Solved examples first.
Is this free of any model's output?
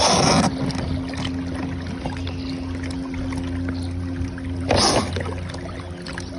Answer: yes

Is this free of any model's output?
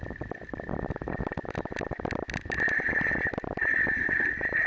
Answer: yes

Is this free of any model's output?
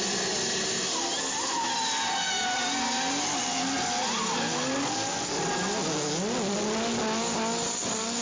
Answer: yes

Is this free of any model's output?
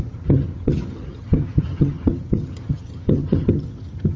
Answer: no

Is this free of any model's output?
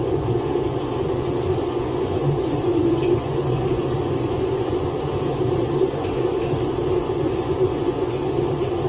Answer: no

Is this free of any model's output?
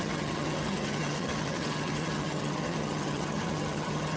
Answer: no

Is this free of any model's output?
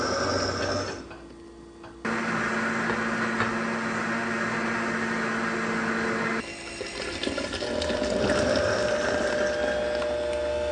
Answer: yes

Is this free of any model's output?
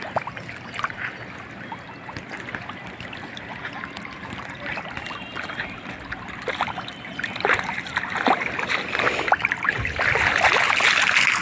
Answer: yes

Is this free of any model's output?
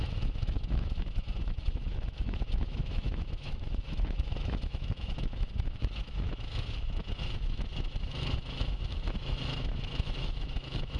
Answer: no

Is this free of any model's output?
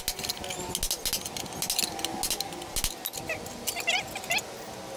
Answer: yes